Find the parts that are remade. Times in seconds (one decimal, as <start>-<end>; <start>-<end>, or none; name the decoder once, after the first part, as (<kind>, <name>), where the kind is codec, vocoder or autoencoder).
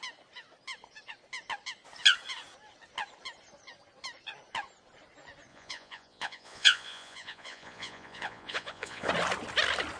5.5-9.1 (vocoder, Vocos)